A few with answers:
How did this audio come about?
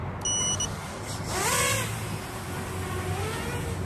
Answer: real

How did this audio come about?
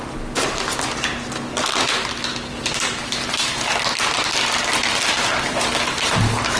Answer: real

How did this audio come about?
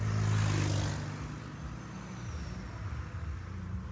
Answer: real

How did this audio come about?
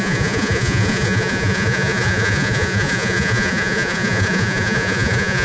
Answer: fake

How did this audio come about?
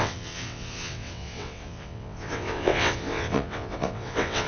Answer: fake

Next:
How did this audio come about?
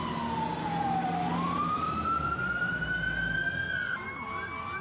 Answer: real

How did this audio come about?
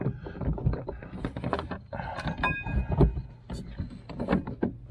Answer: real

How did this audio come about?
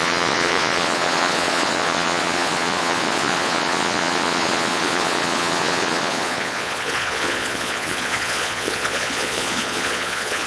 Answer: fake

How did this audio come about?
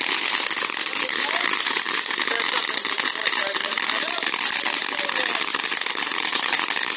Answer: real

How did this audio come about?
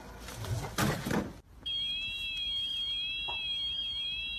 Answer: real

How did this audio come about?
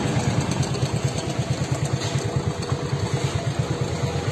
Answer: real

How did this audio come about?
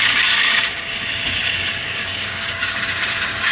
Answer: fake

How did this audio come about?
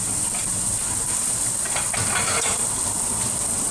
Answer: fake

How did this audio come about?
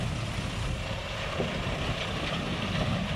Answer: fake